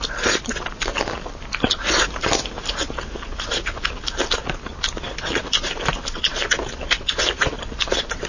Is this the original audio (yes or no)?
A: yes